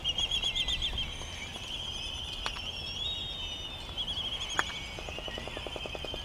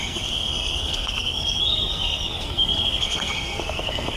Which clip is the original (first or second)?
first